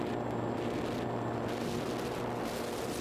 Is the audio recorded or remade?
recorded